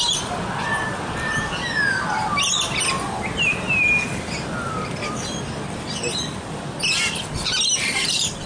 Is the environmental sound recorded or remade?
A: recorded